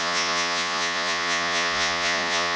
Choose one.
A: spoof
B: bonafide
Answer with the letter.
A